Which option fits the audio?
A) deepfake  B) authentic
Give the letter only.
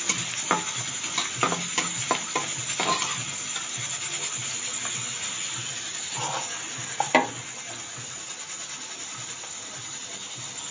B